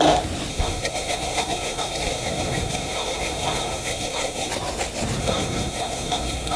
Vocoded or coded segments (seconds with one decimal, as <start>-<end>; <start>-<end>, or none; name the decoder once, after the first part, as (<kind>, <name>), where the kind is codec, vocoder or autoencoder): 0.5-4.5 (codec, SNAC); 5.2-6.6